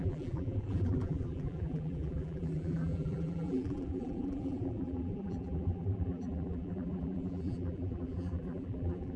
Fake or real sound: fake